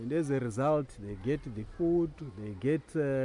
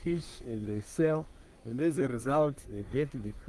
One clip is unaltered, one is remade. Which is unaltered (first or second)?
first